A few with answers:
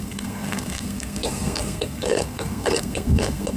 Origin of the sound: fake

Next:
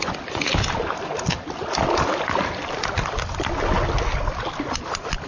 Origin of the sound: real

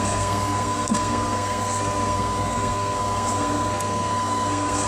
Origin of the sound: fake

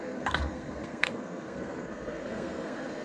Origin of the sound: fake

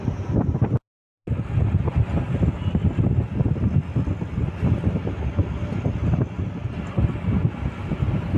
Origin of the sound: real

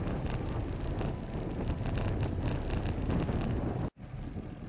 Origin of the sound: real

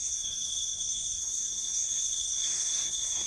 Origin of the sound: fake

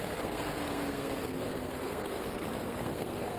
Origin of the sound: fake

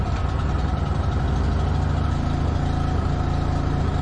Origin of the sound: real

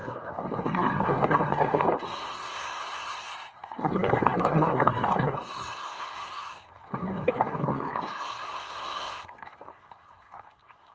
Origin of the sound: fake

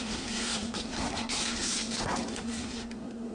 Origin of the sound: fake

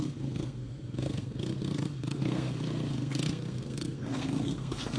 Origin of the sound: fake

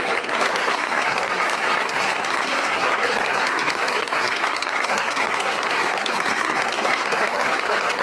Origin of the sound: fake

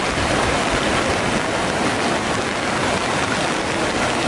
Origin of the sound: real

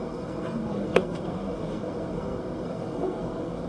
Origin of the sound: fake